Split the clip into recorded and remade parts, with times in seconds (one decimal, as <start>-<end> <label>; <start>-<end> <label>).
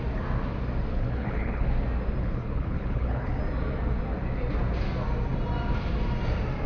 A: 0.0-0.9 recorded; 0.9-1.7 remade; 1.7-2.2 recorded; 2.2-3.4 remade; 3.4-6.7 recorded